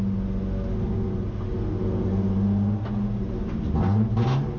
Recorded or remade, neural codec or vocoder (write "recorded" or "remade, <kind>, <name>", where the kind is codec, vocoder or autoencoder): recorded